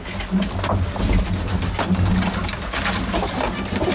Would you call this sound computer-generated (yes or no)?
no